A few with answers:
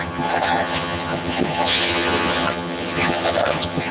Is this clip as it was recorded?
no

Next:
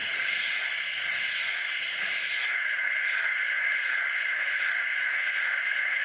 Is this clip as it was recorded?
no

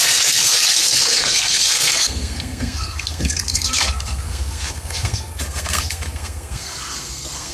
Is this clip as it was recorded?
no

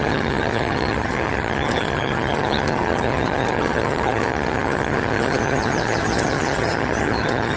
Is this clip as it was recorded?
no